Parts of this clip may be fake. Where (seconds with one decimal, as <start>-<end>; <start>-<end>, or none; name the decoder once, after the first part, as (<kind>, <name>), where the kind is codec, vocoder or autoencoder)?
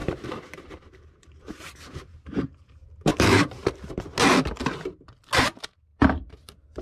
0.0-2.7 (vocoder, BigVGAN v2); 3.1-3.8; 5.9-6.8